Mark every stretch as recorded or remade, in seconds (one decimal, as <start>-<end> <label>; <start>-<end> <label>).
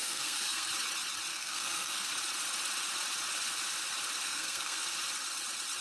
0.0-0.7 remade; 0.7-1.3 recorded; 1.3-2.1 remade; 2.1-4.2 recorded; 4.2-4.8 remade; 4.8-5.8 recorded